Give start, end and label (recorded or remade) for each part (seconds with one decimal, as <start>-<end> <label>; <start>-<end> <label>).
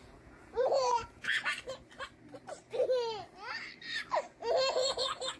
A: 0.0-1.5 remade; 1.5-4.7 recorded; 4.7-5.4 remade